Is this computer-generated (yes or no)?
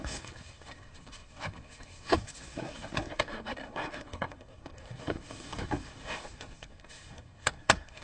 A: yes